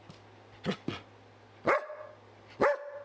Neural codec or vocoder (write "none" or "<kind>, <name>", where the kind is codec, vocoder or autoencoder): none